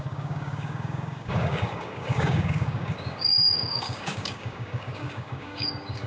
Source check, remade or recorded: remade